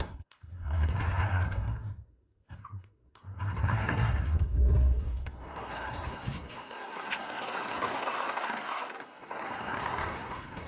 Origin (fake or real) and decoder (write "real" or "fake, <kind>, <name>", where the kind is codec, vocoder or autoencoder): fake, codec, SNAC